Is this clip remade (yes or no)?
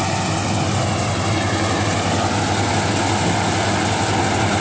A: no